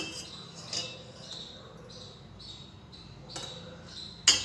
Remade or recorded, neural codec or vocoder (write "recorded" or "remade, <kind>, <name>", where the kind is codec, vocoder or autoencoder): recorded